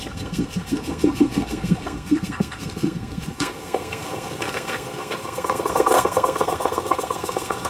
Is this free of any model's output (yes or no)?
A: no